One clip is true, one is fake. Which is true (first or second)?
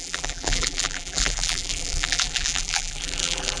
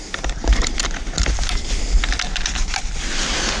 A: second